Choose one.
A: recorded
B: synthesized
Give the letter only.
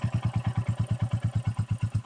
A